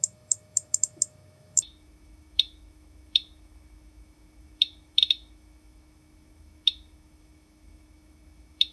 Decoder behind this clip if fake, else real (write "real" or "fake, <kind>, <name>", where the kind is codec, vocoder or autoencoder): fake, autoencoder, DAC-VAE